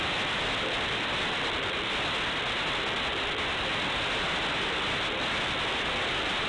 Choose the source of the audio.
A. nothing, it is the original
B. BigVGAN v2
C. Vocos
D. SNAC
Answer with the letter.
A